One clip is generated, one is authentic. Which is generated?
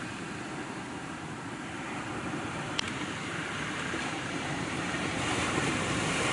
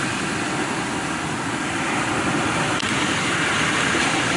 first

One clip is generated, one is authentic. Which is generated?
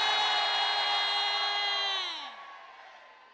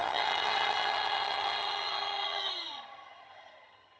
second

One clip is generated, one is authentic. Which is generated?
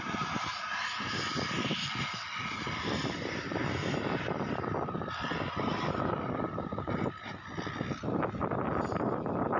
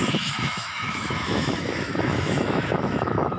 second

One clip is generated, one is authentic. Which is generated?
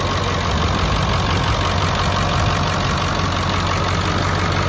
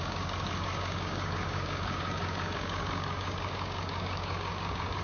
second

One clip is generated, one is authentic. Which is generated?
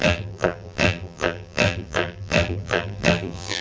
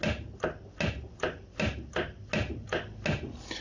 first